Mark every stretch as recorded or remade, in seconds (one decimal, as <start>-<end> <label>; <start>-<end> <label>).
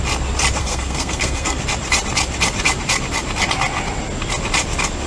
0.0-0.6 recorded; 0.6-1.6 remade; 1.6-5.1 recorded